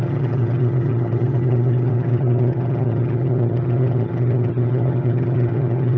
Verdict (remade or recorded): remade